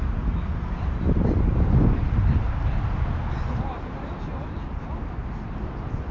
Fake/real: real